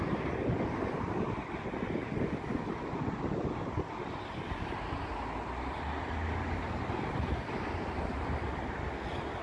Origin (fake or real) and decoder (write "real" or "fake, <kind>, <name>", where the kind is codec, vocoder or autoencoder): real